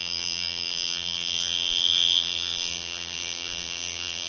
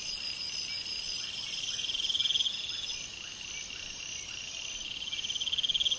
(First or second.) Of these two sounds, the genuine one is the second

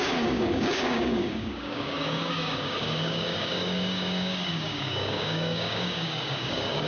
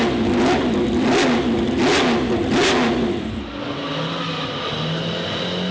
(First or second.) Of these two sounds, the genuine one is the second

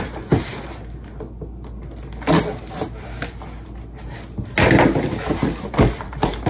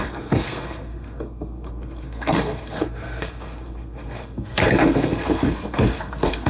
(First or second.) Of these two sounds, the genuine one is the first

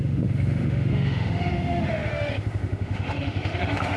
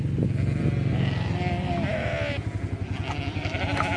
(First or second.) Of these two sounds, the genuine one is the second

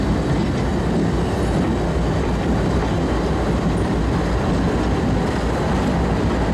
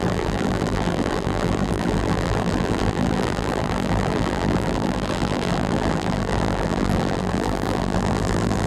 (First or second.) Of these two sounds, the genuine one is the first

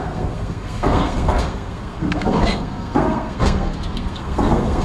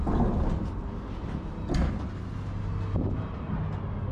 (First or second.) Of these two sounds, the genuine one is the second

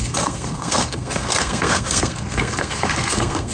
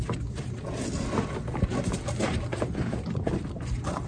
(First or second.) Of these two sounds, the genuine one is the second